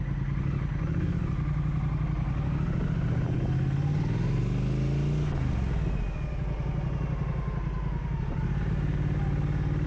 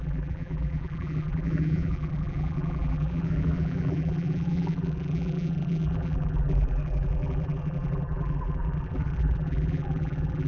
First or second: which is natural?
first